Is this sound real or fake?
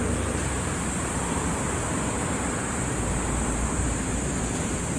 fake